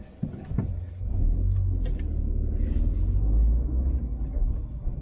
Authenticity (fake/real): real